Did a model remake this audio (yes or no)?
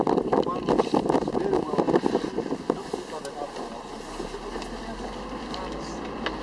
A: no